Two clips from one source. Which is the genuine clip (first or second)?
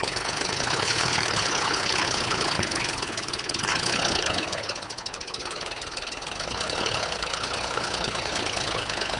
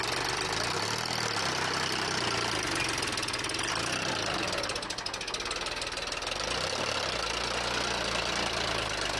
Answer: second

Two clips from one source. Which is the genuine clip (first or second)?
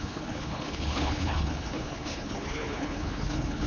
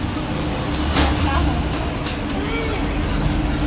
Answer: second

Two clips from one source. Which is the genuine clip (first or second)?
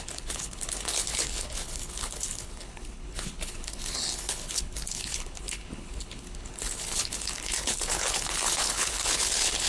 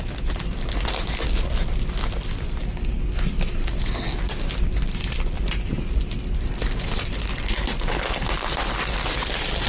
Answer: second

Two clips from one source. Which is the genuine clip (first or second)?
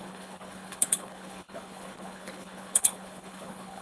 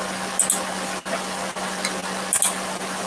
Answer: second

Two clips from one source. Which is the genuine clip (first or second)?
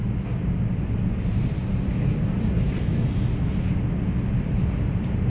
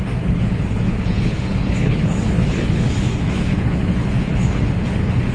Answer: first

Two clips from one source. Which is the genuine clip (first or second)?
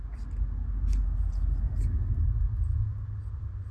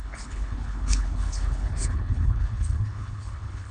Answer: first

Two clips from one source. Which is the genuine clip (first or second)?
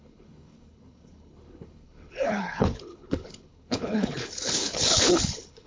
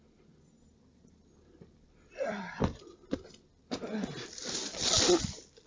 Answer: second